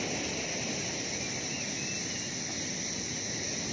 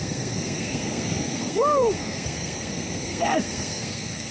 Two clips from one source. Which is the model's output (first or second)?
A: second